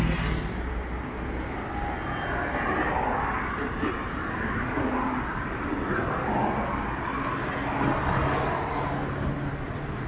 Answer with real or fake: real